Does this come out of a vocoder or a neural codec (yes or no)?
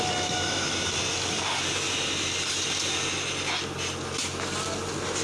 no